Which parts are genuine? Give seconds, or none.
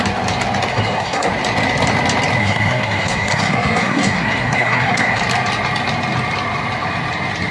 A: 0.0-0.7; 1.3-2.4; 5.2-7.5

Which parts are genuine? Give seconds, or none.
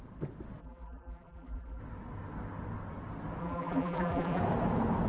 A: 0.0-0.6; 1.8-3.4; 4.4-5.1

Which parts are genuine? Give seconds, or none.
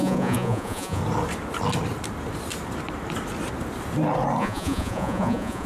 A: 1.0-4.4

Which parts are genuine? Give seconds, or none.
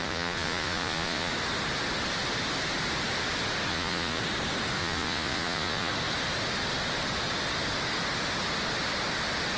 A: 1.3-3.7; 4.2-4.8; 5.9-9.6